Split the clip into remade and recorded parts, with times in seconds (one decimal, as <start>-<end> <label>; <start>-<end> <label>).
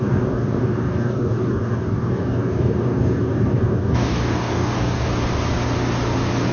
0.0-5.1 remade; 5.1-6.5 recorded